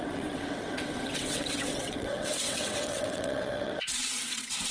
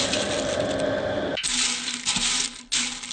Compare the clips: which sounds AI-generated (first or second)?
first